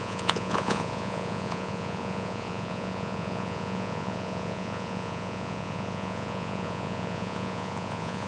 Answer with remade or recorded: remade